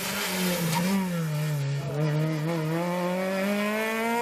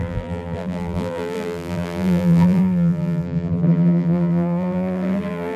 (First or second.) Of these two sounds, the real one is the first